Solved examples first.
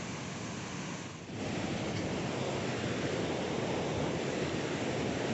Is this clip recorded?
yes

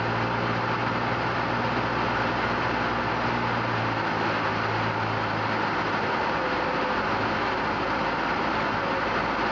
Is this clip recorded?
yes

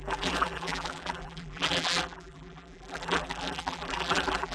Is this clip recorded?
no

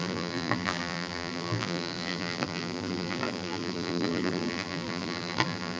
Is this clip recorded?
no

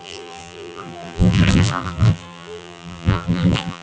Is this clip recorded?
no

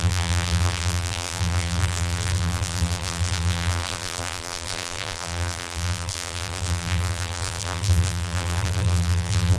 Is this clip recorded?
no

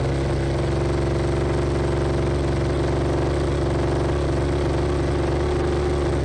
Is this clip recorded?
yes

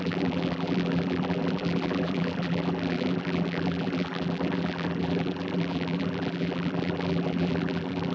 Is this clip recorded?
no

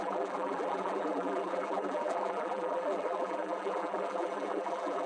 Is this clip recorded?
no